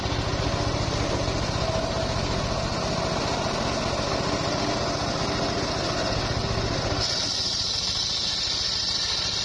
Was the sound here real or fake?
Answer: real